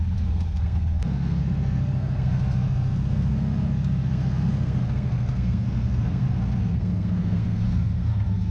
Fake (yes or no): yes